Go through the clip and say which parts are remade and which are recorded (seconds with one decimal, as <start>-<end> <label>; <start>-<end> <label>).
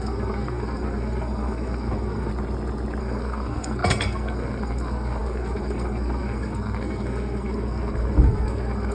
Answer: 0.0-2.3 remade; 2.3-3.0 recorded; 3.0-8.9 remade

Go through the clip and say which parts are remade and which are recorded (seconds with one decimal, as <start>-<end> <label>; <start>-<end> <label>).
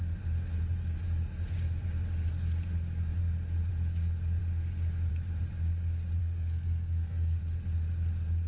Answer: 0.0-6.2 recorded; 6.2-7.4 remade; 7.4-8.5 recorded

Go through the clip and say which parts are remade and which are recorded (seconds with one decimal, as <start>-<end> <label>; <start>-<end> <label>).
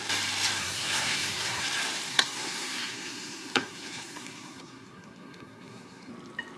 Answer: 0.0-0.6 recorded; 0.6-1.6 remade; 1.6-2.1 recorded; 2.1-6.1 remade; 6.1-6.6 recorded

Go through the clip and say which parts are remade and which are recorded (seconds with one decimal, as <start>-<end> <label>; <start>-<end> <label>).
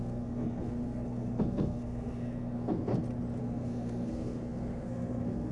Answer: 0.0-2.9 remade; 2.9-3.4 recorded; 3.4-5.5 remade